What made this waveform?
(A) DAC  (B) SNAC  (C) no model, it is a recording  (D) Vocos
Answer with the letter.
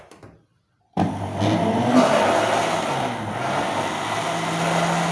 C